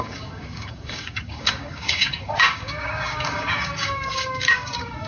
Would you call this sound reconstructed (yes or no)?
yes